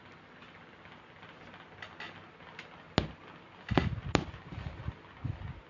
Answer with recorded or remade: recorded